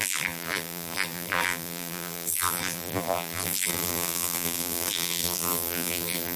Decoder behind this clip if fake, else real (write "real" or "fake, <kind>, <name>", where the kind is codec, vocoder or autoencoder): fake, vocoder, BigVGAN v2